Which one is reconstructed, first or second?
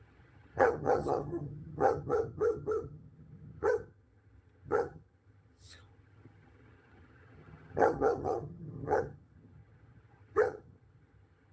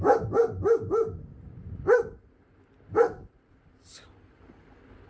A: first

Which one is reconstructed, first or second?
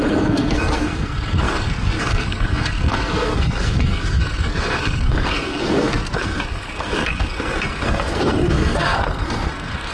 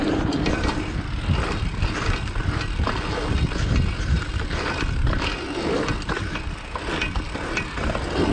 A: first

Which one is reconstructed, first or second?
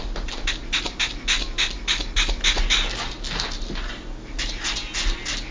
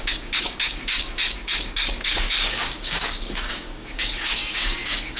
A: second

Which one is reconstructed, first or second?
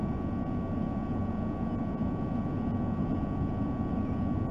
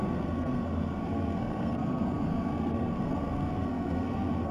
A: second